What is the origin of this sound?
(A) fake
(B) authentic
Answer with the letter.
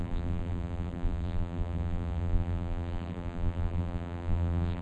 A